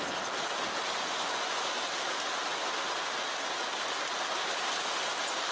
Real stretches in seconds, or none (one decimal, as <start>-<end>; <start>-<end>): 0.0-0.8; 1.7-5.5